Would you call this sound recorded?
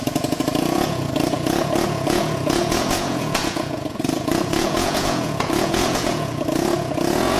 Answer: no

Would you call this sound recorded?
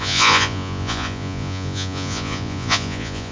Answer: no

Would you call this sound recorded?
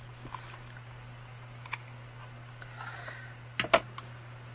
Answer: yes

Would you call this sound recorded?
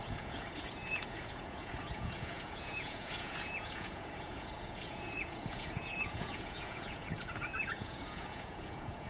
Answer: no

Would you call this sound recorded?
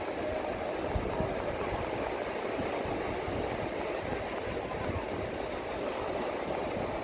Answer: yes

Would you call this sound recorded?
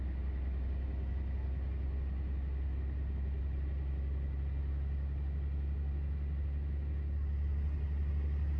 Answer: yes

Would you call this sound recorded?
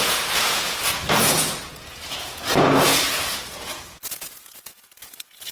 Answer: no